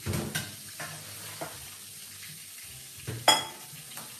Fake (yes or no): no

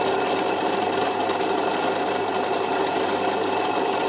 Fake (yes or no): no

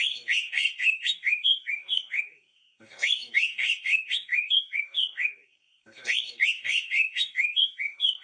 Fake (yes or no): yes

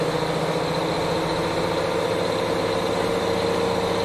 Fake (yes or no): no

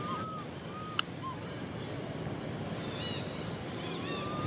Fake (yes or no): no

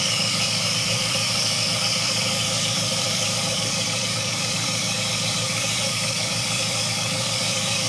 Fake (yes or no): yes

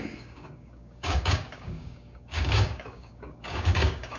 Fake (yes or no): yes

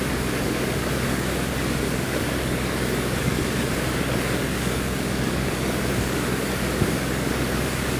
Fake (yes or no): yes